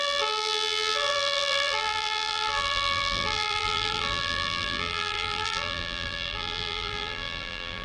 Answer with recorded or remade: remade